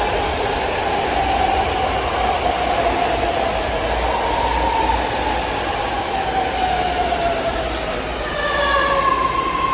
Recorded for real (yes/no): yes